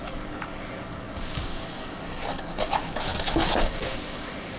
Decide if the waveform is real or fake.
fake